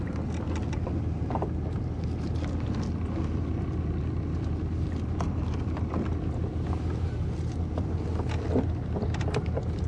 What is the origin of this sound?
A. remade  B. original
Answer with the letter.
B